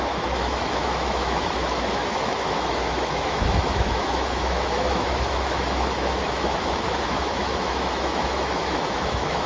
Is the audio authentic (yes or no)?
no